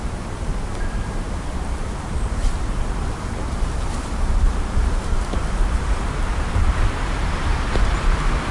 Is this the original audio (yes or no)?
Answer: no